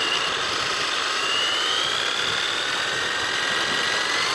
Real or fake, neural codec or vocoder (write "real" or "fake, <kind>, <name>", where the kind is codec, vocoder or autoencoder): real